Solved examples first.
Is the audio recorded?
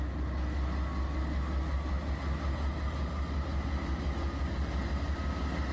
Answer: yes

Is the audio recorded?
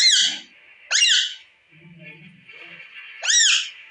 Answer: yes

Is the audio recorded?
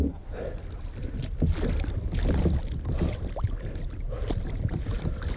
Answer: yes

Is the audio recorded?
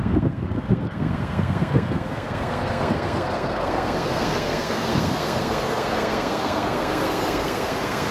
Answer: no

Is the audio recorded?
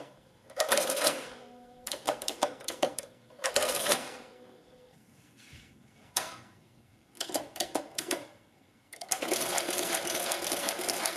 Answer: no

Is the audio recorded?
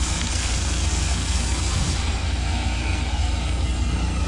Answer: no